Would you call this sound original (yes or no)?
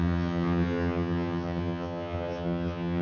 no